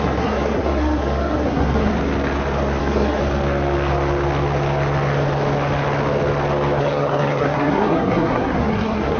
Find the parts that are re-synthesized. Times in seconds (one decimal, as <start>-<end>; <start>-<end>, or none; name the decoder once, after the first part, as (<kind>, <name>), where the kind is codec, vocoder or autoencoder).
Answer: 0.0-1.9 (codec, SNAC); 2.8-3.2; 6.8-9.2